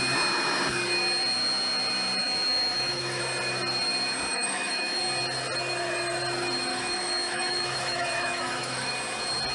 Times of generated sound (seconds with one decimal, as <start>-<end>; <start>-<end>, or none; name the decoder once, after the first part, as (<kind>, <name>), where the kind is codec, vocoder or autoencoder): 2.2-3.2 (autoencoder, DAC-VAE); 4.3-5.0; 6.7-8.9